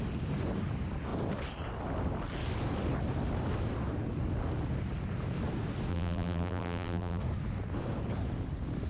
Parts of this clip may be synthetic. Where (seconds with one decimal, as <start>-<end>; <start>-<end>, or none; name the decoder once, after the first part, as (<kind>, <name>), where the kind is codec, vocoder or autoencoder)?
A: 5.9-7.2 (vocoder, BigVGAN v2)